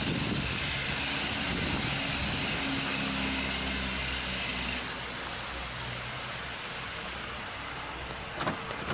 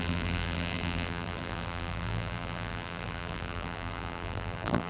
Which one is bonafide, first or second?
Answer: first